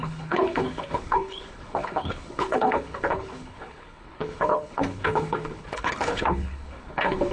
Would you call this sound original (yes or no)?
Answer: no